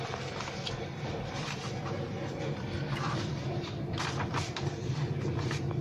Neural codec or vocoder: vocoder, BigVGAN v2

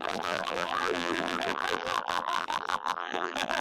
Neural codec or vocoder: vocoder, BigVGAN v2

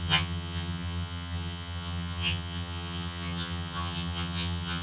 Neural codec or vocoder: vocoder, HiFi-GAN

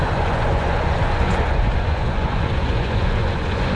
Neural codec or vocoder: vocoder, Vocos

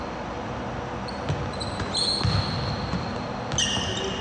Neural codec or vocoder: none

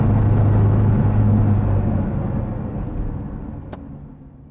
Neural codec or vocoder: none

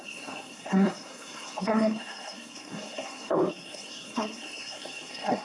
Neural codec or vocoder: codec, SNAC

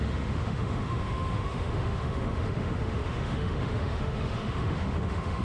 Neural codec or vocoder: autoencoder, DAC-VAE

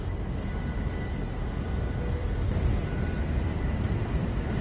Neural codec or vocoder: none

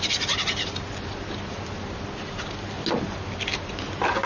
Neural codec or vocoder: none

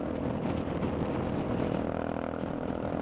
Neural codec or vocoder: none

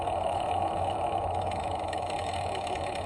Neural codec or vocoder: autoencoder, DAC-VAE